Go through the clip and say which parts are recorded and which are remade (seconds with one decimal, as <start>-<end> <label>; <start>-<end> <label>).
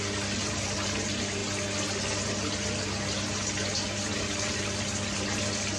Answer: 0.0-5.8 recorded